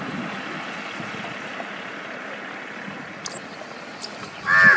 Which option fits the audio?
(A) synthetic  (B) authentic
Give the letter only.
B